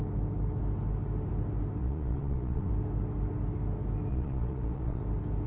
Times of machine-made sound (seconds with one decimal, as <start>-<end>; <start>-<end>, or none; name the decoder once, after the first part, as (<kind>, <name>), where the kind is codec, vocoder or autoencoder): 1.8-2.7 (vocoder, Vocos); 4.1-5.0